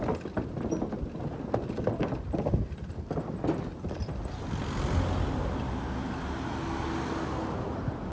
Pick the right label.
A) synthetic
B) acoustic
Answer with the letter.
B